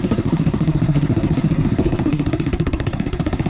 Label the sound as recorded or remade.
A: remade